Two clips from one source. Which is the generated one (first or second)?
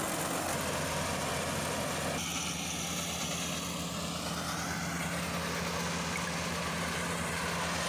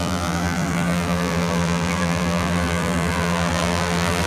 second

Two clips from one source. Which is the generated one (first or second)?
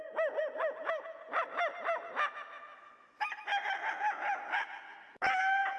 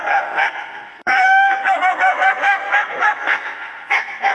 second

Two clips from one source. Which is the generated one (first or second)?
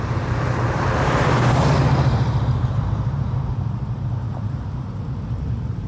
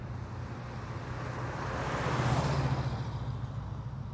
first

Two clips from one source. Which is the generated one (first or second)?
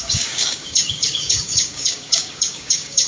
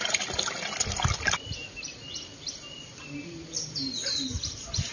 first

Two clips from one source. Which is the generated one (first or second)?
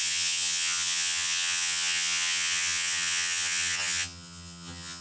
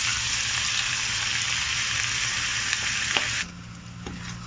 first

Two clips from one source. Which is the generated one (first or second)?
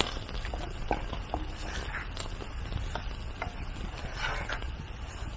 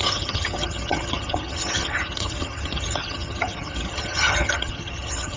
second